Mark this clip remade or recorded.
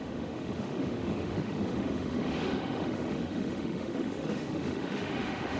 remade